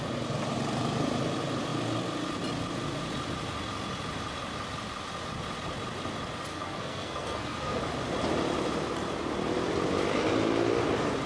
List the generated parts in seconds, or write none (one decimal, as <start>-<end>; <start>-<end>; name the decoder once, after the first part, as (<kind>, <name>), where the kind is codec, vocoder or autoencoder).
6.5-7.8 (codec, SNAC)